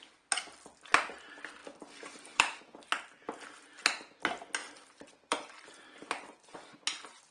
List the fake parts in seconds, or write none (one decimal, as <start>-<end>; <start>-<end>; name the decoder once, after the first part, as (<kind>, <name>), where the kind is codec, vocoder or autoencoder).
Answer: 1.6-2.6 (vocoder, BigVGAN v2); 4.6-6.5